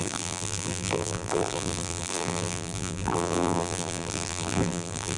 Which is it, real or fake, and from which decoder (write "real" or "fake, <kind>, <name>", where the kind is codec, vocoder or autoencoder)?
fake, vocoder, BigVGAN v2